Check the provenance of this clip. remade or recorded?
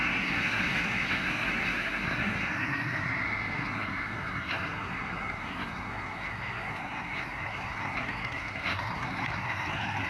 remade